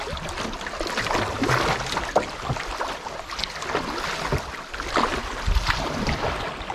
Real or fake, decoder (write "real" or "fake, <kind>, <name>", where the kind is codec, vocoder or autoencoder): real